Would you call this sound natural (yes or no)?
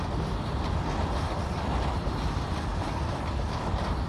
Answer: yes